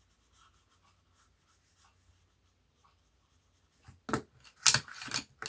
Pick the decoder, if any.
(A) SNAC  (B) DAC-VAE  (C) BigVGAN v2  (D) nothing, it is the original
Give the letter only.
D